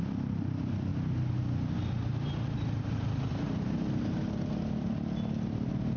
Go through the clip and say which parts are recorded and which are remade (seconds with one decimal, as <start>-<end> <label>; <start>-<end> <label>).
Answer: 0.0-6.0 recorded